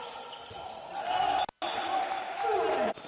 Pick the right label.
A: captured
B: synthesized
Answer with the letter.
A